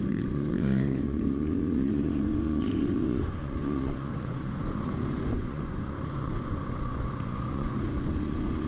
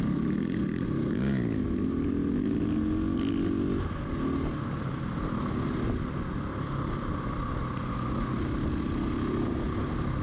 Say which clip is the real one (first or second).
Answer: second